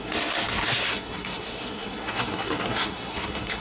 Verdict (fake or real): fake